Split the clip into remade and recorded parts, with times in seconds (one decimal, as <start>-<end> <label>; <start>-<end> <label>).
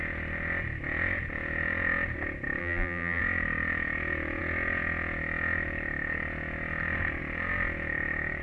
0.0-2.6 recorded; 2.6-3.2 remade; 3.2-8.4 recorded